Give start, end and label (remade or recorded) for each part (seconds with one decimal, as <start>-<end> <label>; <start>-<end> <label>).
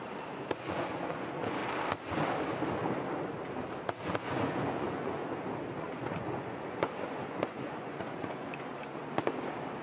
0.0-1.6 remade; 1.6-4.2 recorded; 4.2-5.2 remade; 5.2-5.8 recorded; 5.8-9.0 remade; 9.0-9.8 recorded